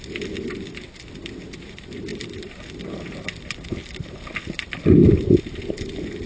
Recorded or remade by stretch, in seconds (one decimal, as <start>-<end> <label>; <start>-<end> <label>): 0.0-6.3 recorded